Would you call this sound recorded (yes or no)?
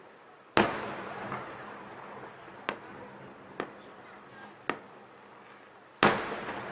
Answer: yes